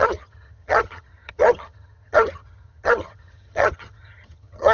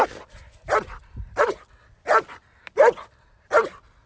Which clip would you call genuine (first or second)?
second